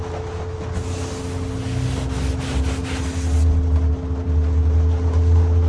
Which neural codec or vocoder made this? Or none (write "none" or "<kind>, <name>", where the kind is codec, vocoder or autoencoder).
none